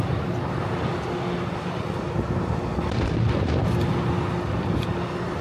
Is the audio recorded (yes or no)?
yes